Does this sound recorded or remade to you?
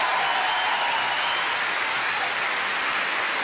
recorded